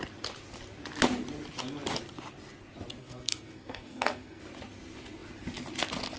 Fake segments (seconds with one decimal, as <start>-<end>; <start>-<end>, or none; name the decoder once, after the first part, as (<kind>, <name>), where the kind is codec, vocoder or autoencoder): 3.0-4.4 (codec, SNAC)